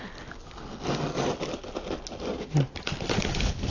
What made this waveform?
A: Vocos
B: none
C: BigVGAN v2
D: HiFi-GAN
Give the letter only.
B